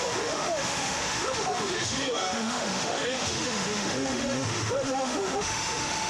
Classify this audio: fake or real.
fake